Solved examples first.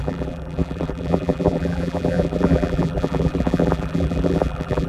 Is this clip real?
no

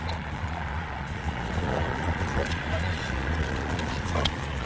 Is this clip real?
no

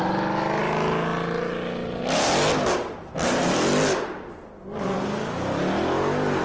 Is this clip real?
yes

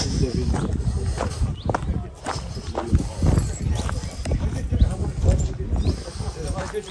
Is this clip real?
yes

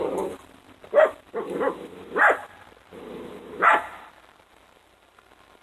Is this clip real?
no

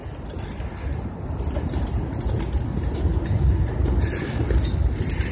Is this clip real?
yes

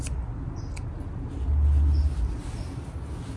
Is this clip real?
yes